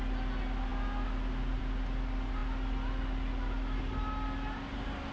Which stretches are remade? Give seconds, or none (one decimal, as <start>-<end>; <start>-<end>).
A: none